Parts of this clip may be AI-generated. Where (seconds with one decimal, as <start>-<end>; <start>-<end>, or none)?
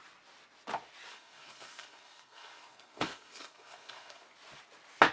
1.1-4.2